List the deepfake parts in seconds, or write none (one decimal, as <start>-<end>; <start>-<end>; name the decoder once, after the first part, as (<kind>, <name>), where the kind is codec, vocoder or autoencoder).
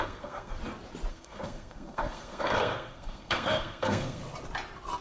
0.0-0.6 (codec, SNAC); 1.1-4.2